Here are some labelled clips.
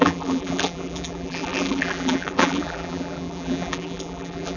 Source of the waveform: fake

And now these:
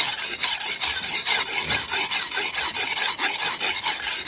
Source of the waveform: real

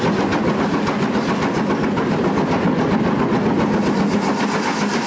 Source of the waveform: real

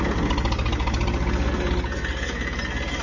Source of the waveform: real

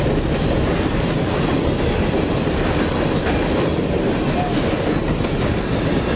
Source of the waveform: real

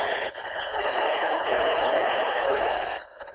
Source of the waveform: fake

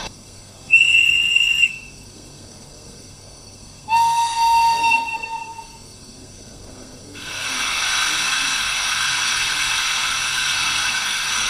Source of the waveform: fake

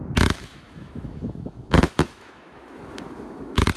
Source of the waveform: fake